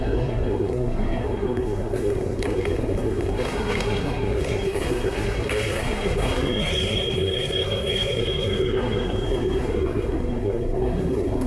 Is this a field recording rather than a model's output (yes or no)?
no